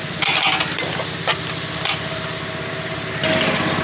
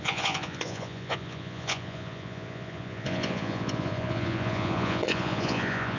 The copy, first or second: second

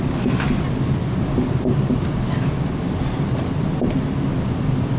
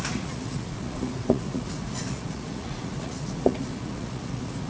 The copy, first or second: second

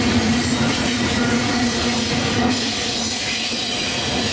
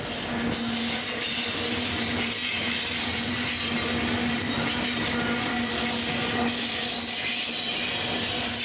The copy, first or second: first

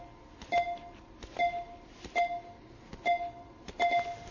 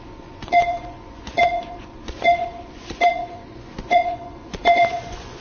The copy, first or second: second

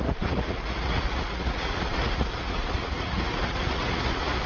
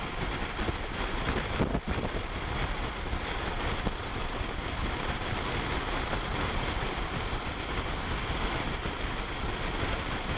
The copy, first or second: first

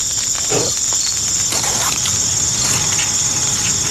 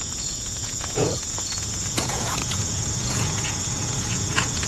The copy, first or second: second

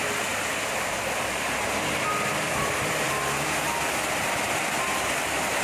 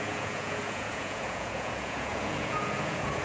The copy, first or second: second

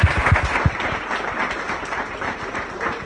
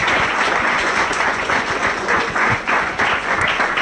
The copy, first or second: second